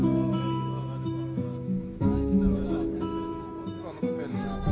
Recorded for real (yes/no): no